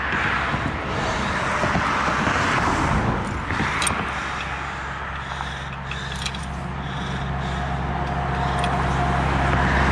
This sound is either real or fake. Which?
real